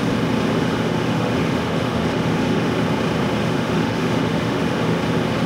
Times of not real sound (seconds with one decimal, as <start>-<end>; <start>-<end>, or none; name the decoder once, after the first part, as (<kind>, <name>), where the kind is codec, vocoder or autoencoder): 0.5-2.7 (autoencoder, DAC-VAE); 3.4-5.0